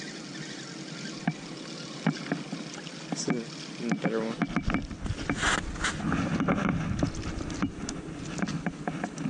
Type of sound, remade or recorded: recorded